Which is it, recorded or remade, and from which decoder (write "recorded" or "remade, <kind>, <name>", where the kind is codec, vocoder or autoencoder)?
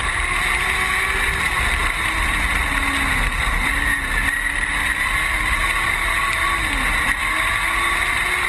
recorded